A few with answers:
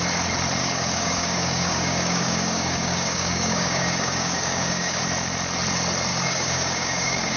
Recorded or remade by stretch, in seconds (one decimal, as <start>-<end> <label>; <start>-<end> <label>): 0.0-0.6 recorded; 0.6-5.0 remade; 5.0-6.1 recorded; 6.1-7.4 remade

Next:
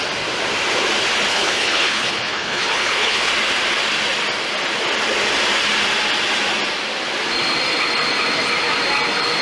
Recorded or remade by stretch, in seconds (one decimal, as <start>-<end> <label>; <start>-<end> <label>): 0.0-1.3 recorded; 1.3-3.3 remade; 3.3-9.4 recorded

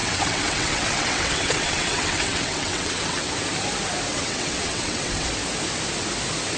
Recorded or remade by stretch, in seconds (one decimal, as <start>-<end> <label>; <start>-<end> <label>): 0.0-3.3 remade; 3.3-4.1 recorded; 4.1-5.3 remade; 5.3-6.6 recorded

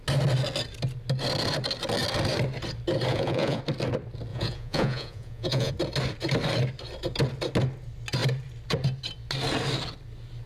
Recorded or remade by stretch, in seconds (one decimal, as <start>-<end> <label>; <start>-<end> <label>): 0.0-3.1 recorded; 3.1-3.6 remade; 3.6-4.3 recorded; 4.3-5.7 remade; 5.7-10.5 recorded